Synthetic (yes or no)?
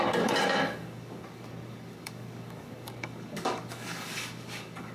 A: yes